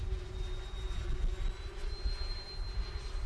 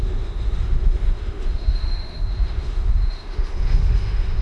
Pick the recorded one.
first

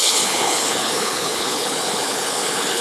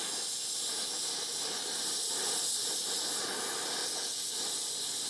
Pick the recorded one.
second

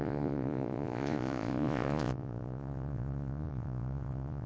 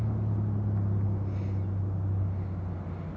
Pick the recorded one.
second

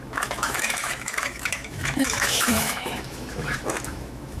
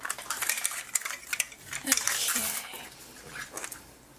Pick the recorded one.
second